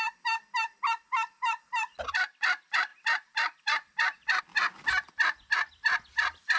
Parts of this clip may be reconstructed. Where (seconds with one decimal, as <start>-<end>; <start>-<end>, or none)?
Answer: none